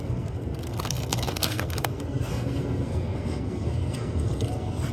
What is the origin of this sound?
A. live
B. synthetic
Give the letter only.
B